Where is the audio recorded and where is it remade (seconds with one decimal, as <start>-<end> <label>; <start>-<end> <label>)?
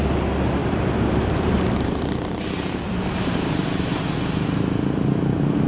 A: 0.0-0.6 recorded; 0.6-4.0 remade; 4.0-5.7 recorded